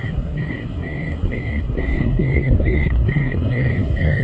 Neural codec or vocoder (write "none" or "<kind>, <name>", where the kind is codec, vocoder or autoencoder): codec, SNAC